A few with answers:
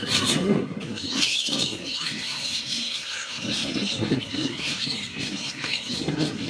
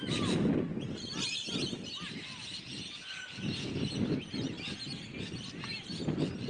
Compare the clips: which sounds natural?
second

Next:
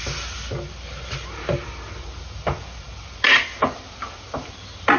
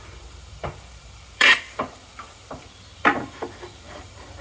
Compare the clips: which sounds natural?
first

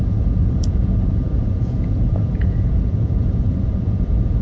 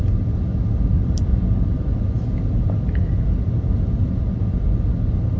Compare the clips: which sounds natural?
second